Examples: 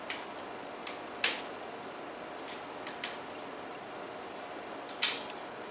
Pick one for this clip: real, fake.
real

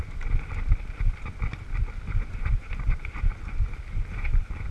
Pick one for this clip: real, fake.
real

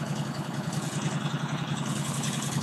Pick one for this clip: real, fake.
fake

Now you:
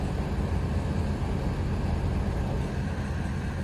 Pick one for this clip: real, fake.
real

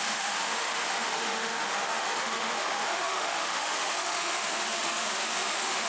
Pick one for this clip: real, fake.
fake